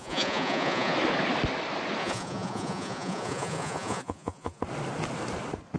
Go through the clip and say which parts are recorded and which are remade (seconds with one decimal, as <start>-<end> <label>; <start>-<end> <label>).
0.0-0.9 remade; 0.9-2.0 recorded; 2.0-4.6 remade; 4.6-5.8 recorded